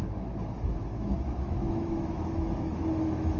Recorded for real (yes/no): no